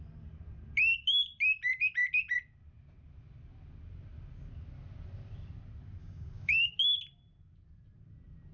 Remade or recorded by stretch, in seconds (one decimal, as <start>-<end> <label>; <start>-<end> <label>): 0.0-6.0 recorded; 6.0-6.7 remade; 6.7-8.5 recorded